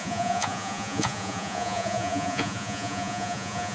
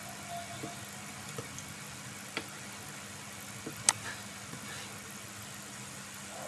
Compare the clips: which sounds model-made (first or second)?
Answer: first